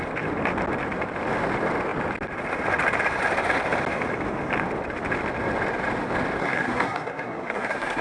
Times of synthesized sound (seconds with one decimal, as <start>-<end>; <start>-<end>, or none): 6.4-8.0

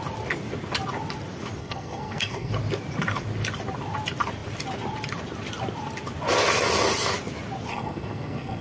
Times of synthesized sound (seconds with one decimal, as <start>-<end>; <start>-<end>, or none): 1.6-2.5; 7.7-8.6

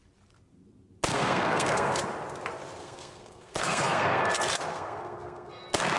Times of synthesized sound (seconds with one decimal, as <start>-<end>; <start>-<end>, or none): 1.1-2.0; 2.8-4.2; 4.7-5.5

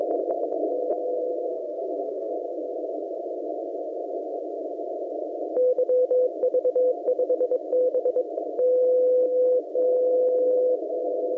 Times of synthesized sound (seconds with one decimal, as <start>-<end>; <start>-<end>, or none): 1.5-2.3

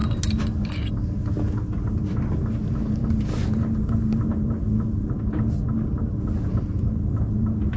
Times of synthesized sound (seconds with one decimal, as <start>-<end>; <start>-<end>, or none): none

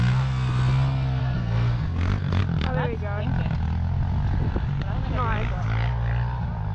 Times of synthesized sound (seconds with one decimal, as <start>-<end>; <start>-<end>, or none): 1.2-2.4

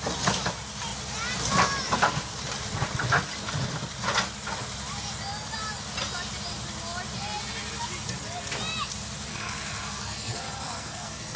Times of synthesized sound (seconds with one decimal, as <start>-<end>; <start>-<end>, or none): 9.3-11.4